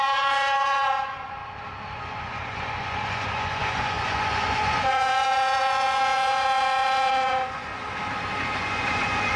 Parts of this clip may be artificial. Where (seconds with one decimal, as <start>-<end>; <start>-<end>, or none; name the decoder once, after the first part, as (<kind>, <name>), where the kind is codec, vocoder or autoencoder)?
0.0-1.4 (vocoder, Vocos); 2.0-7.7; 8.6-9.4